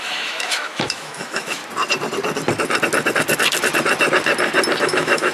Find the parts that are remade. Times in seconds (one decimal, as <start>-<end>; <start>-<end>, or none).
0.0-1.6; 4.8-5.3